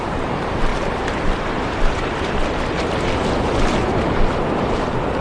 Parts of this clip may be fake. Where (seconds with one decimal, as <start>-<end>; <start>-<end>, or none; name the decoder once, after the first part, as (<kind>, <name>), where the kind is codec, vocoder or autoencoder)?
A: 0.0-0.7 (vocoder, BigVGAN v2); 3.8-5.2